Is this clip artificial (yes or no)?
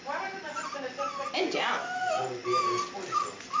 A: no